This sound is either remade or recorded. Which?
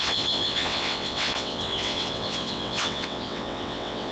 remade